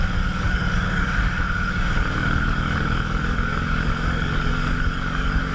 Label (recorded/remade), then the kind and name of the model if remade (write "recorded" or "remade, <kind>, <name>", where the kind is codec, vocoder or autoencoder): remade, codec, DAC